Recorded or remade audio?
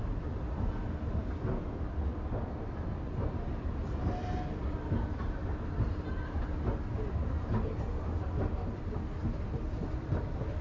recorded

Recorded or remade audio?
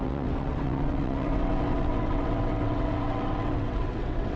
remade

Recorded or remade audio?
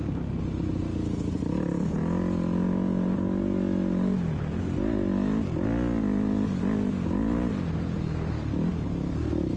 recorded